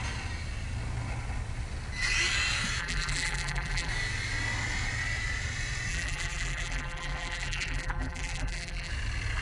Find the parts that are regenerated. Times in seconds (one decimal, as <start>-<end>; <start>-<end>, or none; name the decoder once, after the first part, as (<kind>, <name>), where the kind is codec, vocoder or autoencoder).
2.8-3.9 (vocoder, BigVGAN v2); 5.9-8.9